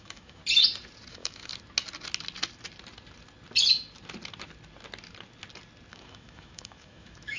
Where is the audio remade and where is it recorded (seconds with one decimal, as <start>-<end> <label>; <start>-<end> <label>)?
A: 0.0-0.4 remade; 0.4-1.1 recorded; 1.1-1.5 remade; 1.5-5.9 recorded; 5.9-7.4 remade